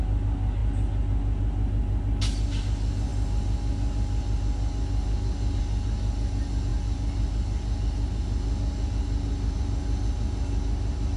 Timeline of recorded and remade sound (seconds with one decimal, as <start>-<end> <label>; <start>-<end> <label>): 0.0-11.2 recorded